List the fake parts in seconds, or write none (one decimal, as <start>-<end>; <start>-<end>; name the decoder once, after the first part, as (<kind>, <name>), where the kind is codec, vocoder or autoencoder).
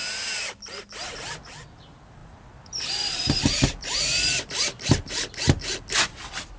0.7-6.6 (vocoder, BigVGAN v2)